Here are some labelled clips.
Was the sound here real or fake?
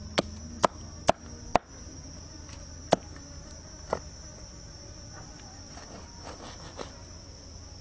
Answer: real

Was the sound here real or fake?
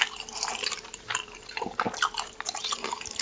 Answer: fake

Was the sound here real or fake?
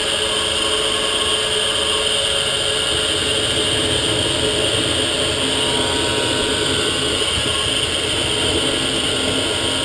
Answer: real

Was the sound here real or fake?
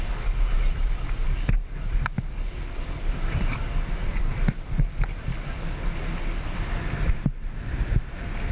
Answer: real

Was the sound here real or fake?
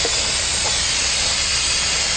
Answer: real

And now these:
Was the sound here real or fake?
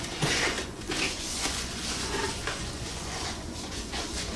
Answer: fake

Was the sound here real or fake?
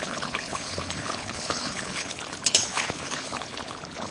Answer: fake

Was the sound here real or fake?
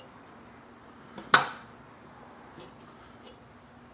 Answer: real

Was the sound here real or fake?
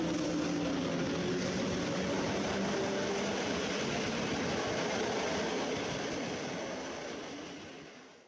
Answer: real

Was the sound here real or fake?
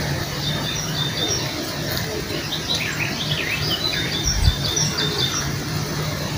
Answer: real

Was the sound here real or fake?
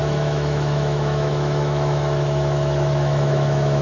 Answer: fake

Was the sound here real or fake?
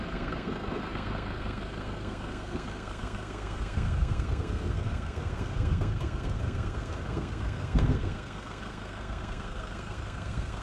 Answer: fake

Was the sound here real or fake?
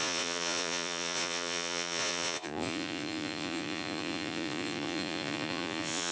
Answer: fake